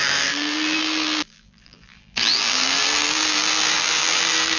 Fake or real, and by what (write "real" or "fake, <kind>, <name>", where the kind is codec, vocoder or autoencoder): fake, vocoder, BigVGAN v2